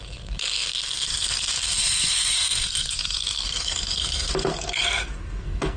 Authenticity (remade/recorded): remade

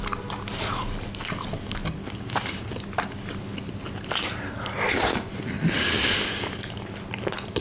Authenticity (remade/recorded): recorded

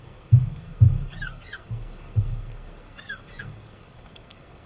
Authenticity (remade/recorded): remade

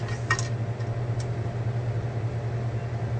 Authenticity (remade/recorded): recorded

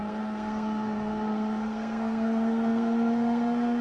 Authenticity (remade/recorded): remade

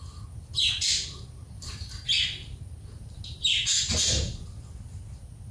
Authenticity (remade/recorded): recorded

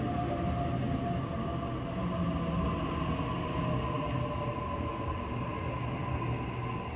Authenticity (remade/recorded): recorded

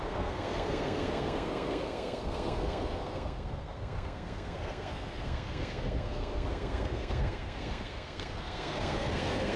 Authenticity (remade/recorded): remade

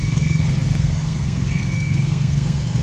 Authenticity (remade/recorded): remade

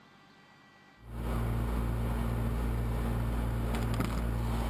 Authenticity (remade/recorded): recorded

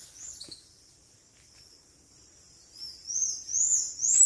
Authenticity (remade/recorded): recorded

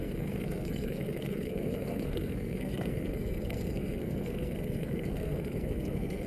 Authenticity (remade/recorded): remade